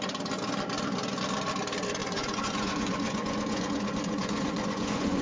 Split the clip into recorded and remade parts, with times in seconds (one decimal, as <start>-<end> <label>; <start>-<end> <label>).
0.0-2.0 recorded; 2.0-5.2 remade